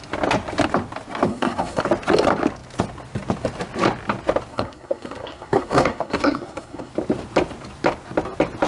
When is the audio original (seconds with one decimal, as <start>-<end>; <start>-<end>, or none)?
0.0-1.3; 1.8-4.5; 6.9-8.7